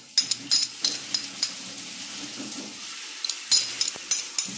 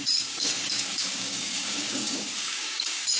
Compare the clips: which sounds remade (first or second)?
second